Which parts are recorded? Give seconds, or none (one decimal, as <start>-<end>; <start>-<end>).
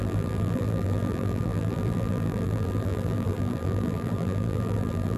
none